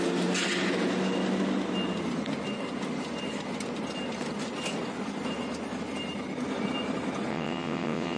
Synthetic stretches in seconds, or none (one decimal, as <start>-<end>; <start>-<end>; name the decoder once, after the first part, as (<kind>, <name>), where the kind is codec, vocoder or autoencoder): 7.3-8.2 (vocoder, WaveNeXt)